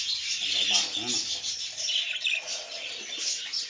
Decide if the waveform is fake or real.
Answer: real